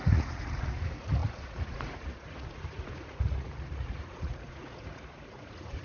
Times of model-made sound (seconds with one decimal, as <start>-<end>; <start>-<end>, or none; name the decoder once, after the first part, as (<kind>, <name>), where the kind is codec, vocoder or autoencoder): 0.0-5.8 (vocoder, Vocos)